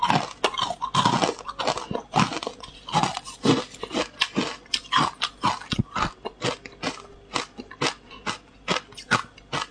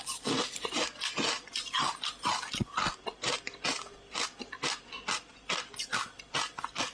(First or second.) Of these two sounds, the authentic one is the first